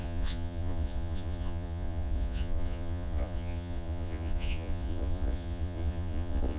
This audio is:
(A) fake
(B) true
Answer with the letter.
A